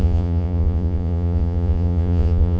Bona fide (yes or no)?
no